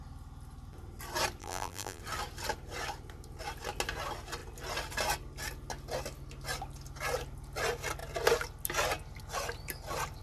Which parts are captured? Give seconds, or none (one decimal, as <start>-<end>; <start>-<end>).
0.0-1.4; 2.0-10.2